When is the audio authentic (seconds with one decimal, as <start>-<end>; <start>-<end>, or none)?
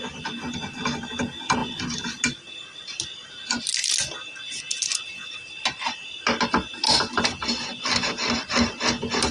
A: 0.0-9.3